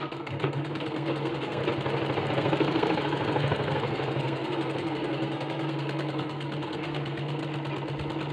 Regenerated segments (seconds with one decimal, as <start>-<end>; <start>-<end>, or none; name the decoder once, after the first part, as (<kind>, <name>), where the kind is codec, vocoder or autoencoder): 0.0-1.6 (codec, SNAC); 2.2-7.4